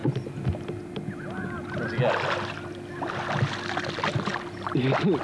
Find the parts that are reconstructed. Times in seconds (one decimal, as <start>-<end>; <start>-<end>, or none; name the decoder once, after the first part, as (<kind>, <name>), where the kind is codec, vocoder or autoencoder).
none